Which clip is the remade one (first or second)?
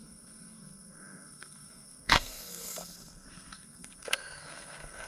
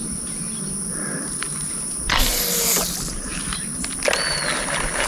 first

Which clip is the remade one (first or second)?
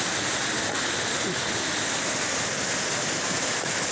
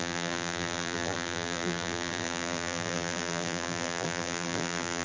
second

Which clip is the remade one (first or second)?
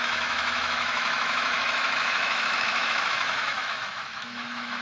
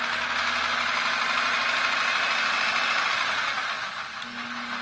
first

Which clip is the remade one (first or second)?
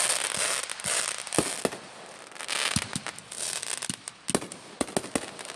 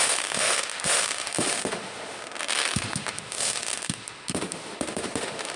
second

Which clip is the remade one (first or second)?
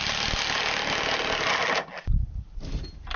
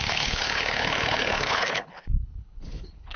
second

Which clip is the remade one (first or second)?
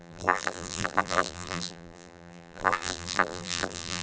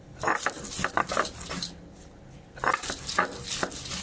first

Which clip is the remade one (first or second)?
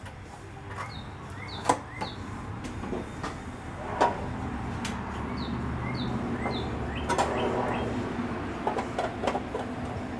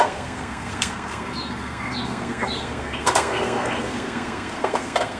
second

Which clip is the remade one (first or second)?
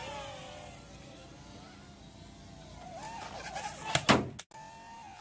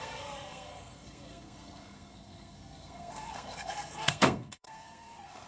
second